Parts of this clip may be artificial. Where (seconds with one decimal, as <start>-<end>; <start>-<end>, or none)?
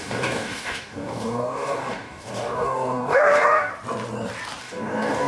0.0-3.7; 4.6-5.3